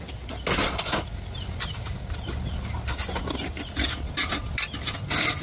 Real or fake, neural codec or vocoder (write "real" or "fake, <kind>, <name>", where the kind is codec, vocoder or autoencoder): real